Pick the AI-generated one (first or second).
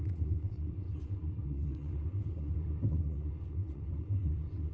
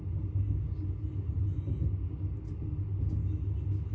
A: first